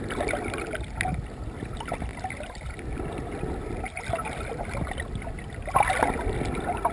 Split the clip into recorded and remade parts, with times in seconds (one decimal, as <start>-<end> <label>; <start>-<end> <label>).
0.0-6.9 recorded